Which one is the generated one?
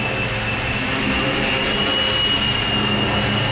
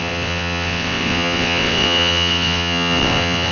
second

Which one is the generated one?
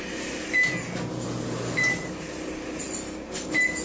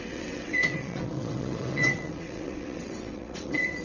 second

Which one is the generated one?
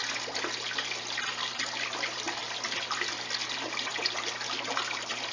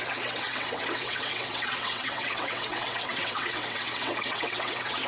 second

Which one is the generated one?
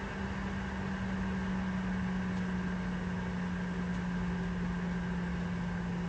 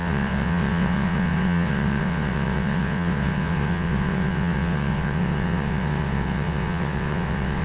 second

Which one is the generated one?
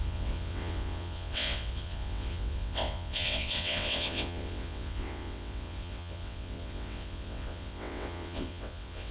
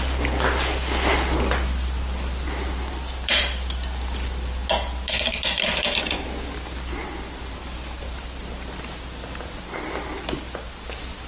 first